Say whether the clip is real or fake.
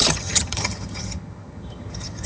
fake